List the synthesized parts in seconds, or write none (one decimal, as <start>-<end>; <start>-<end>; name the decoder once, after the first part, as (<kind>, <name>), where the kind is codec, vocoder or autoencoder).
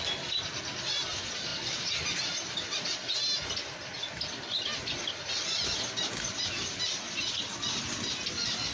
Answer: none